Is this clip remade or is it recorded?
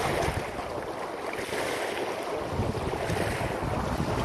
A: recorded